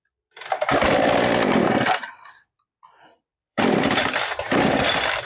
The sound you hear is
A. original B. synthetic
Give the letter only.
B